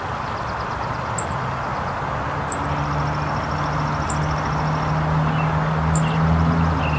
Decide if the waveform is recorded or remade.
recorded